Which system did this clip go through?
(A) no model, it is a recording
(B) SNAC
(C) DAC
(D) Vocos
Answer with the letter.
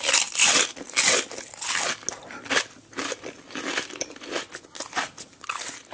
A